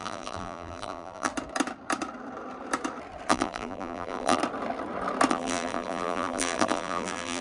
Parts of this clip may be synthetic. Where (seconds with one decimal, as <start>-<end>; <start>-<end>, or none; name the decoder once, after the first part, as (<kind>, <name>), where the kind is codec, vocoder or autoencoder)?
0.0-1.3 (vocoder, BigVGAN v2); 3.3-4.4; 5.3-7.4

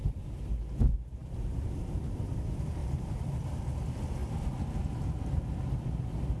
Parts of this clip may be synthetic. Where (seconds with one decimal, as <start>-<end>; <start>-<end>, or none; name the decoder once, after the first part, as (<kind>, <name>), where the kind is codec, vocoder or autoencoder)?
0.0-0.6 (vocoder, BigVGAN v2); 1.2-2.3; 2.8-3.6

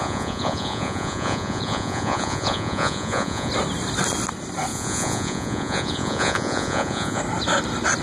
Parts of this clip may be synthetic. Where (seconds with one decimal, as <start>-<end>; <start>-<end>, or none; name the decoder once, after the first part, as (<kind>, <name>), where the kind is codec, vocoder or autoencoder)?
0.0-3.5 (vocoder, Vocos); 4.7-7.2

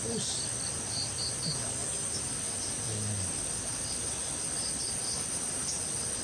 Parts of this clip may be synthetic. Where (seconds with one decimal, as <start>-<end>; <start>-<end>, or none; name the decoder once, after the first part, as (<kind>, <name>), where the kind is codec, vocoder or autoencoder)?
none